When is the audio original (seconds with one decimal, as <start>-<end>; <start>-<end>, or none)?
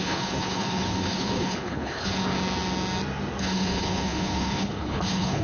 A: 2.2-3.4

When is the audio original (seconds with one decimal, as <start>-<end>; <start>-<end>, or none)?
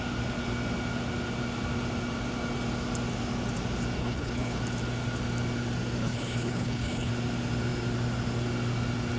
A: 0.0-4.0; 4.6-6.0; 7.1-9.2